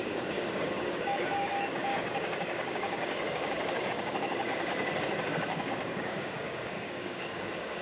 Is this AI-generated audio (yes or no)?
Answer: yes